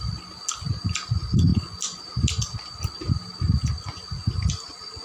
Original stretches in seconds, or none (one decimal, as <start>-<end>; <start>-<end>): 0.0-5.0